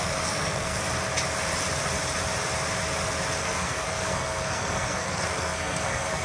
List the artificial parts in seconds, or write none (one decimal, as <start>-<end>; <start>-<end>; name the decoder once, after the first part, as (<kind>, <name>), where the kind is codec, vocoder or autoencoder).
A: 0.0-0.8 (codec, SNAC); 3.4-6.2